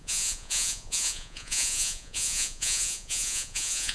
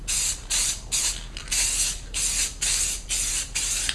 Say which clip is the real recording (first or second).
second